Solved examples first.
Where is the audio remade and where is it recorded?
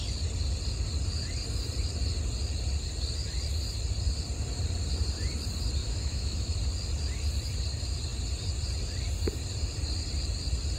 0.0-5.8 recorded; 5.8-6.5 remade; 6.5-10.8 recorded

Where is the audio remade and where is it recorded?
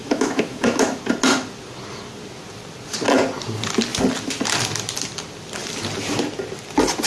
0.0-1.0 remade; 1.0-7.1 recorded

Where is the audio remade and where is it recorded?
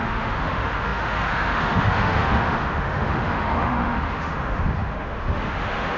0.0-6.0 remade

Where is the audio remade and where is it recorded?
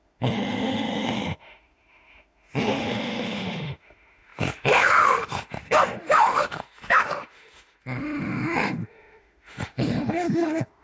0.0-10.8 remade